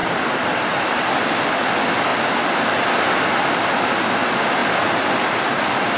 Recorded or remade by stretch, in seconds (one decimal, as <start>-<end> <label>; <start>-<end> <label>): 0.0-1.1 remade; 1.1-6.0 recorded